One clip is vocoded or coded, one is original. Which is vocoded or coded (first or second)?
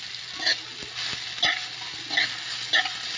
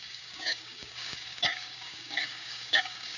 second